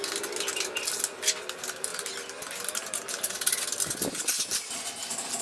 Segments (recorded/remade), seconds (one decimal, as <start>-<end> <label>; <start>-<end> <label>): 0.0-5.4 recorded